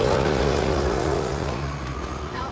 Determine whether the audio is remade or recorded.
remade